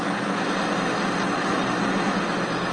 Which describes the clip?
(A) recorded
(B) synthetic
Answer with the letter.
A